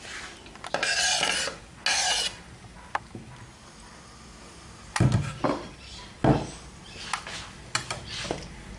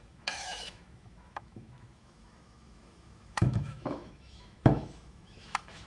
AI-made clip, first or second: second